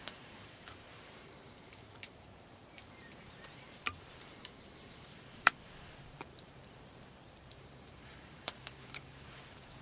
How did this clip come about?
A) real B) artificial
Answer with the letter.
B